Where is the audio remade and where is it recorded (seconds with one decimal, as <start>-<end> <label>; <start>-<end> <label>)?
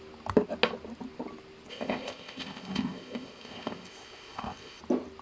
0.0-1.7 recorded; 1.7-4.8 remade; 4.8-5.2 recorded